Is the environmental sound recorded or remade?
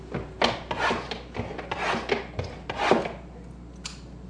recorded